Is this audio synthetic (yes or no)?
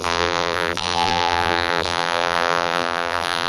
yes